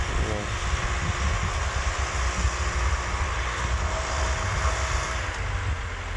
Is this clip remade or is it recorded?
recorded